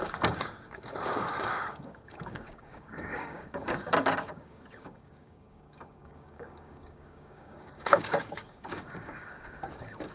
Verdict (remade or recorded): remade